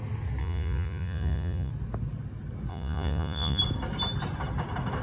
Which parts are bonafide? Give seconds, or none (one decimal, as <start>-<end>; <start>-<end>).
0.0-0.4; 1.7-2.7; 3.6-5.0